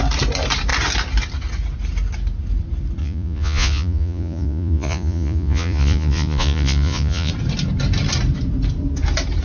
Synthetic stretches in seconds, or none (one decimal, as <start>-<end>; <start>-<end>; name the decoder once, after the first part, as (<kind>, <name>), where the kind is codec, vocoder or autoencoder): 3.0-7.3 (vocoder, Vocos)